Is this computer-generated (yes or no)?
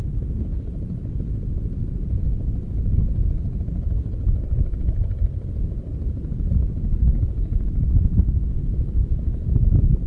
no